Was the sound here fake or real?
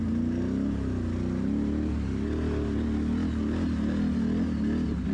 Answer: real